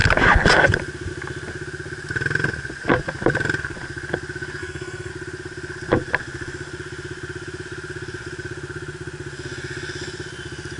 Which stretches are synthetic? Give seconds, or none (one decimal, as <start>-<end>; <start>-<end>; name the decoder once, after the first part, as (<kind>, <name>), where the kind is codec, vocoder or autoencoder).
4.6-5.1 (codec, SNAC)